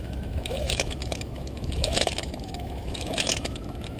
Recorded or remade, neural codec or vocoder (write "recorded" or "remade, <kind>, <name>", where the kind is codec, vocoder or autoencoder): remade, autoencoder, DAC-VAE